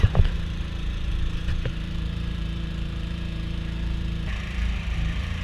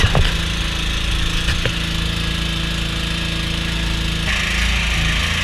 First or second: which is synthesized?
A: first